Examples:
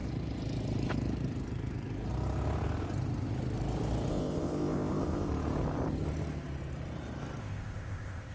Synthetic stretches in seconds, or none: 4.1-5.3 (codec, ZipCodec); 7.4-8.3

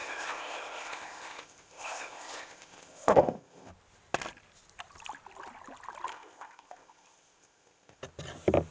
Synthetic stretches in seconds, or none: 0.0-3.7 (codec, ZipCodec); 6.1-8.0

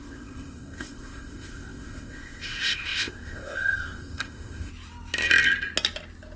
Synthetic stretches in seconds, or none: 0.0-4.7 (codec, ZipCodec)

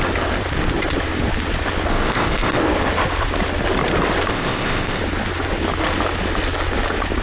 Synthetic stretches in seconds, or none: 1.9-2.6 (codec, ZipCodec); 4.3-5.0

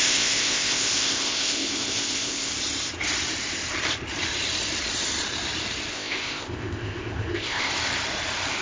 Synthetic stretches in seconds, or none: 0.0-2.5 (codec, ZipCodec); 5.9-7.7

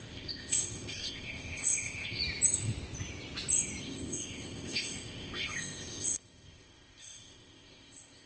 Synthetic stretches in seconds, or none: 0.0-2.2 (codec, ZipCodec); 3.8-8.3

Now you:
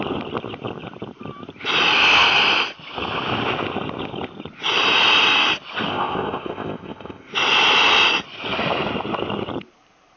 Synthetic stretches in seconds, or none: 5.9-7.3 (codec, ZipCodec)